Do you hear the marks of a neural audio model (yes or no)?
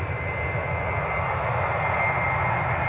no